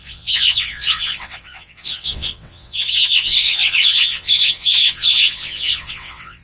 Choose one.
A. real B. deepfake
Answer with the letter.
B